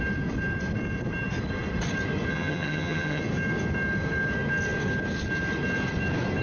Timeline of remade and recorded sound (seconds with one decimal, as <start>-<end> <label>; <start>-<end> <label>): 0.0-2.3 recorded; 2.3-3.2 remade; 3.2-6.4 recorded